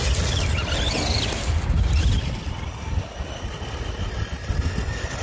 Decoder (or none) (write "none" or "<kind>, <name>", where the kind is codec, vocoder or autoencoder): none